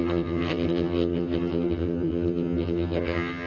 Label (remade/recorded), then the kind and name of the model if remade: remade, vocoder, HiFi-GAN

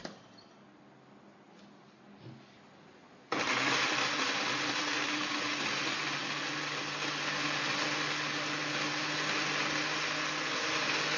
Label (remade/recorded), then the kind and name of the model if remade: recorded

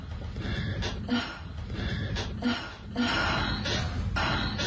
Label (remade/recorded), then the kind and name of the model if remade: recorded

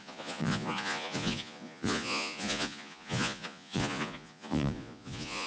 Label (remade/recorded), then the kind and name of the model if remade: remade, vocoder, Vocos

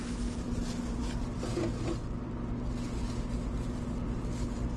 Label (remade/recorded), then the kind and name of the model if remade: recorded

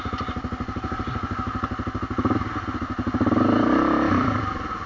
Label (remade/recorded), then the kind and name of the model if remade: remade, vocoder, BigVGAN v2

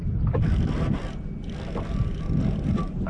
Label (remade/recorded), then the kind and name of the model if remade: recorded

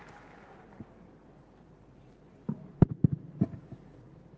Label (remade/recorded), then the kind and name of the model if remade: recorded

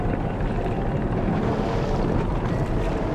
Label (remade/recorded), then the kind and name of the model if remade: recorded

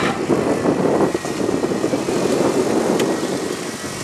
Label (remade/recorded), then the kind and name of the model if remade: recorded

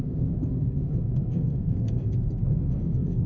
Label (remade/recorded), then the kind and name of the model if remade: remade, codec, SNAC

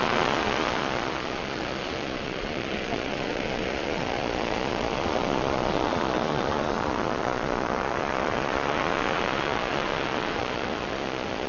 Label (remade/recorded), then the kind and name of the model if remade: remade, vocoder, Vocos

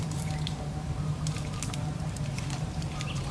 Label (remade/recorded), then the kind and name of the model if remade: remade, vocoder, BigVGAN v2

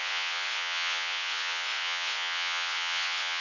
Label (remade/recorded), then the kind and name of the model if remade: remade, vocoder, WaveNeXt